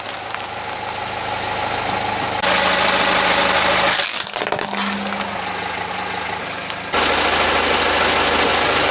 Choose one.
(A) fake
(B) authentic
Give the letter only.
B